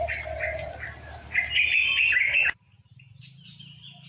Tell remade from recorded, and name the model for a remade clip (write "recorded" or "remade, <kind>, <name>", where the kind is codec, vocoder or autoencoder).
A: recorded